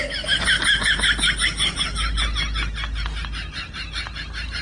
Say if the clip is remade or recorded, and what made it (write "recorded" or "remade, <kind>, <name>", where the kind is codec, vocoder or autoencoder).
recorded